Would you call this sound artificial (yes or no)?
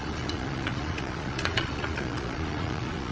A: yes